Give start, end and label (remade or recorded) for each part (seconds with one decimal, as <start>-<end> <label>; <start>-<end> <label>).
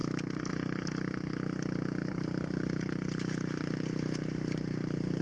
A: 0.0-2.0 recorded; 2.0-5.2 remade